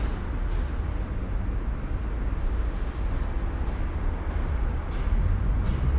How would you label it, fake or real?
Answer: real